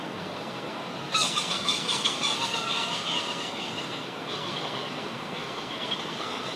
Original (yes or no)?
no